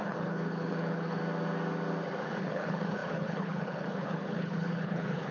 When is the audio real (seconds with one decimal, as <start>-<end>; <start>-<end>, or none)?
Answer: 1.2-2.4

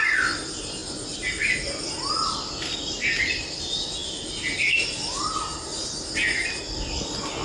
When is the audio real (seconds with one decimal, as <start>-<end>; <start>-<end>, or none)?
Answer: 0.0-7.4